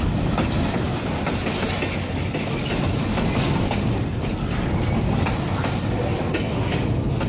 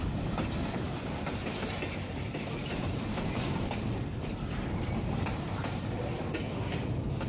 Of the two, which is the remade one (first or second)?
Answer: second